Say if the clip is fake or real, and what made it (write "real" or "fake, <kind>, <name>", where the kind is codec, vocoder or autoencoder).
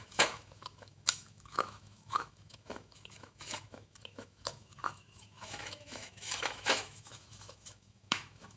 fake, autoencoder, DAC-VAE